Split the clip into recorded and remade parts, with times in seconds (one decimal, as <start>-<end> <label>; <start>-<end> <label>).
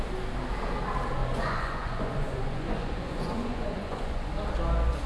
0.0-1.2 recorded; 1.2-4.3 remade; 4.3-5.1 recorded